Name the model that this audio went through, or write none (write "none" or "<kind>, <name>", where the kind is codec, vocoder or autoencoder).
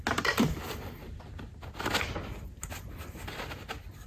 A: none